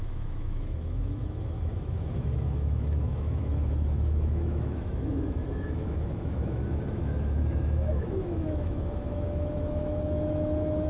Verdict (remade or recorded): remade